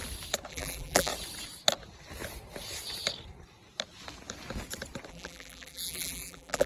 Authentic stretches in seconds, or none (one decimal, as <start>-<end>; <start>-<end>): 0.0-0.5; 1.1-5.1